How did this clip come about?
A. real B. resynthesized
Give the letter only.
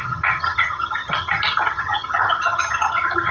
B